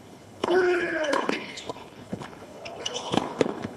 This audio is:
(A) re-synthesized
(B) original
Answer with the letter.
A